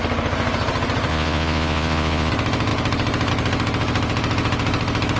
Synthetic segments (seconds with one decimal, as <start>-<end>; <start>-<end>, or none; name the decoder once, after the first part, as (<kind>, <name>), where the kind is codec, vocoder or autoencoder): 1.1-2.3 (vocoder, Vocos)